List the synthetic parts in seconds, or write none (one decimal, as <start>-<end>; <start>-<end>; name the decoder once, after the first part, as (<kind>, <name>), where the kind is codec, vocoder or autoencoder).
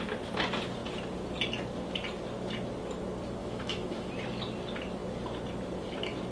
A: 3.4-4.1 (autoencoder, DAC-VAE)